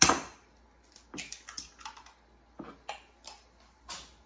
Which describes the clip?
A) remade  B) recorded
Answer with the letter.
B